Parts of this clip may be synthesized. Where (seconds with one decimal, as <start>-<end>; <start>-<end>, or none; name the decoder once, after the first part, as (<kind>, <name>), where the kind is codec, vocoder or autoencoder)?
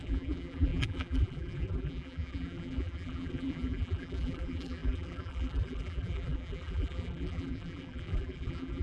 0.0-8.8 (vocoder, BigVGAN v2)